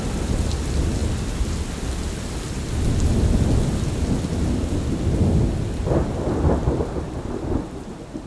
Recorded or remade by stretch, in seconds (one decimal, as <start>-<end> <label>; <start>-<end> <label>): 0.0-8.3 recorded